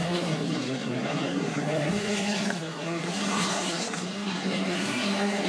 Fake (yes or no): yes